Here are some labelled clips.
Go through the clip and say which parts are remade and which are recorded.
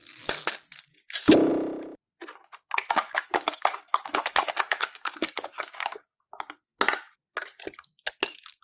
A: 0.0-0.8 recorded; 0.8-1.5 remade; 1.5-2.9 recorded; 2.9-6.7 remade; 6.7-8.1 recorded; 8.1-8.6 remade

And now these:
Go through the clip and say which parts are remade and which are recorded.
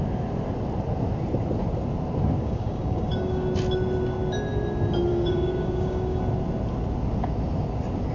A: 0.0-2.4 recorded; 2.4-3.5 remade; 3.5-5.1 recorded; 5.1-6.2 remade; 6.2-8.1 recorded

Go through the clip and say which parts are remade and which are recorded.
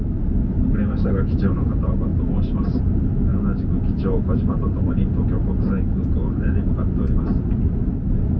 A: 0.0-8.4 recorded